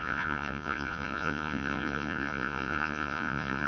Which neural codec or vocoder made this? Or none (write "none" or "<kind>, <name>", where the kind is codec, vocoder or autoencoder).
vocoder, Vocos